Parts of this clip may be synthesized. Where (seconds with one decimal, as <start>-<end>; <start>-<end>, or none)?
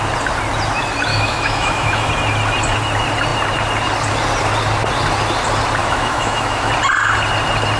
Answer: 1.1-2.1; 5.8-6.7